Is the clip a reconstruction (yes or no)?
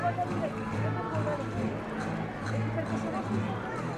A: no